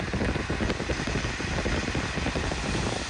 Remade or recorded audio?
recorded